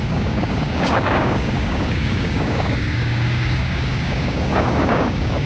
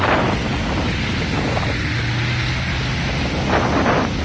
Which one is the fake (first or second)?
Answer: first